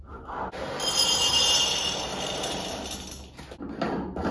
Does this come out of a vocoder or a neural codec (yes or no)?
no